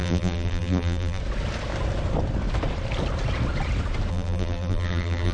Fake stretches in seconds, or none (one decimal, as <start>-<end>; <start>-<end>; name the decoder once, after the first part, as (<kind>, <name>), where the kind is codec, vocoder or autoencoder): 0.0-1.2 (vocoder, BigVGAN v2); 4.1-5.3